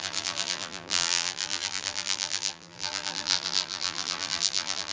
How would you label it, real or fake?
fake